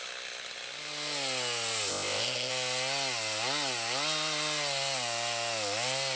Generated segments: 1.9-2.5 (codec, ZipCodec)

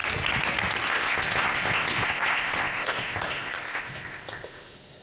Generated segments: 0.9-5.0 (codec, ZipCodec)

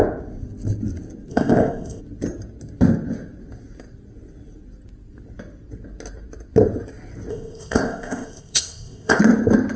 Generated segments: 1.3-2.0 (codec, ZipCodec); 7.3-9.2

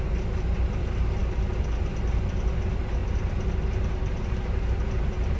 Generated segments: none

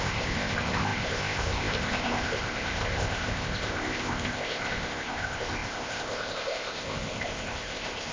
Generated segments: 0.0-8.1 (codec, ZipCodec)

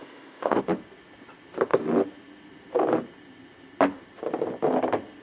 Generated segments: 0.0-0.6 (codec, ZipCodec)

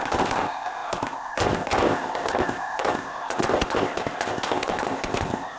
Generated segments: 0.0-5.6 (codec, ZipCodec)